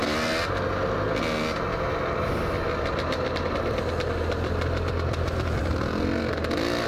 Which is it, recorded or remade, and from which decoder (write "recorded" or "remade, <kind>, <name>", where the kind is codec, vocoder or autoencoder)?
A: recorded